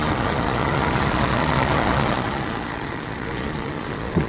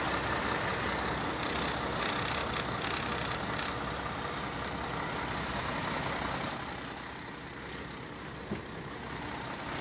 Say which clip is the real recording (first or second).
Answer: second